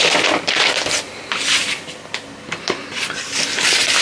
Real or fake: real